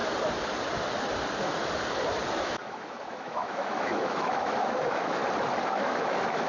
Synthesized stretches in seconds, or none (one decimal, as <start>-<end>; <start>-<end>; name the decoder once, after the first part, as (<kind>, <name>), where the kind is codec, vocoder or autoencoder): 2.4-5.2 (autoencoder, DAC-VAE); 5.7-6.5